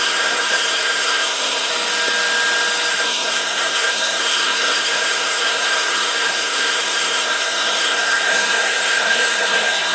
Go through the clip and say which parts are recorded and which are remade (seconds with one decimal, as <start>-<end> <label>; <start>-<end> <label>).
0.0-1.7 remade; 1.7-2.9 recorded; 2.9-9.9 remade